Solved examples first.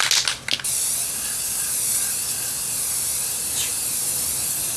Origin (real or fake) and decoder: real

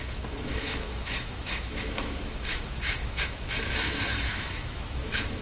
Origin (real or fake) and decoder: fake, autoencoder, DAC-VAE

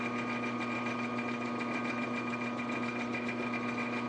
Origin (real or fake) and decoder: real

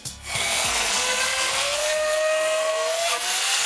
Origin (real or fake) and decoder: fake, codec, SNAC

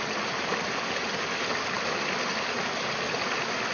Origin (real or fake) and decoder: real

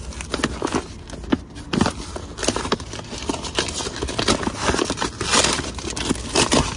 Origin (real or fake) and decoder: real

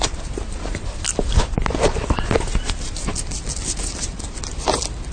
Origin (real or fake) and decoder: real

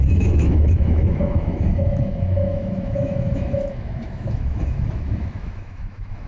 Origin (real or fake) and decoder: fake, autoencoder, DAC-VAE